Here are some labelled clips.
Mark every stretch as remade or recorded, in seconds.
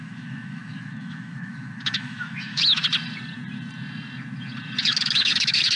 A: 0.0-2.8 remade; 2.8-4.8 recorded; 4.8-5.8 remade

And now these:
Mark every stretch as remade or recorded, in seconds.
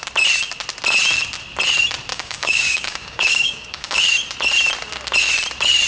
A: 0.0-2.1 recorded; 2.1-4.0 remade; 4.0-5.9 recorded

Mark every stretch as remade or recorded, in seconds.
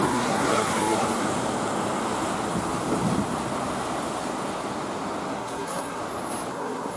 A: 0.0-1.2 remade; 1.2-5.3 recorded; 5.3-6.0 remade; 6.0-6.5 recorded; 6.5-7.0 remade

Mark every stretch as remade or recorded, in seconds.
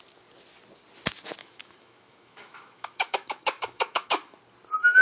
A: 0.0-1.4 recorded; 1.4-4.4 remade; 4.4-5.0 recorded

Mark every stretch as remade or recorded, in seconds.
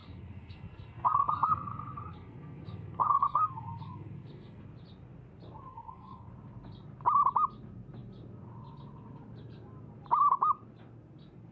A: 0.0-4.6 remade; 4.6-5.7 recorded; 5.7-6.3 remade; 6.3-11.5 recorded